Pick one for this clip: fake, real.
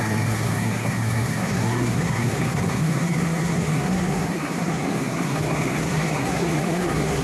fake